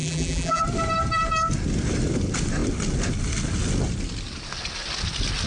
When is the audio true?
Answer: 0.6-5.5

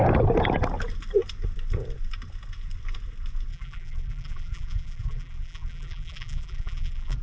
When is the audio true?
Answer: 0.0-3.5

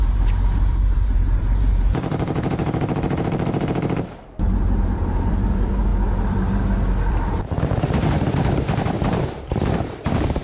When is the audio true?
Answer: 5.9-7.1

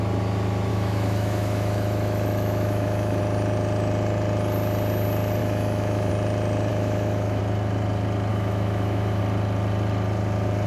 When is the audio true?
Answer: 0.0-0.7; 3.2-5.4; 6.1-6.7; 7.4-8.3; 9.2-10.7

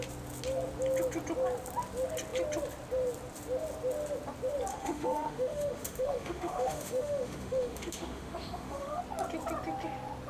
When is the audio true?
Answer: 0.0-4.7; 9.0-10.3

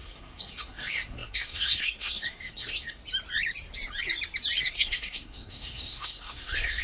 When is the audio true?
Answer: 3.0-4.6

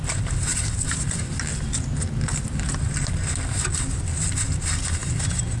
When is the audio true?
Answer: 0.0-5.6